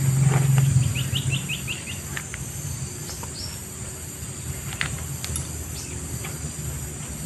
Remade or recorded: recorded